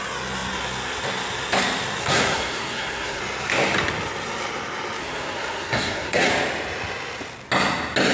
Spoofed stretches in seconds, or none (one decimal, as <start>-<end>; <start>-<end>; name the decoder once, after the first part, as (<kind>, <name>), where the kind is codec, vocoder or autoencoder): 2.0-3.2 (codec, SNAC); 5.0-6.3